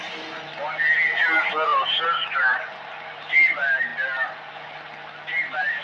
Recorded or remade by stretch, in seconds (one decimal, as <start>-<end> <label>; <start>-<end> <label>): 0.0-5.8 recorded